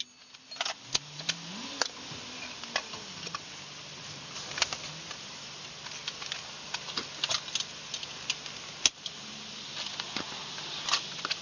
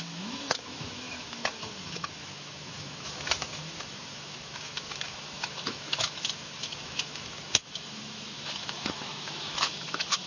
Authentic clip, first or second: first